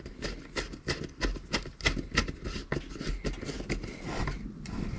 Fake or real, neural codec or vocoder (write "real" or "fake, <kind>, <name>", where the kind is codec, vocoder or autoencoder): real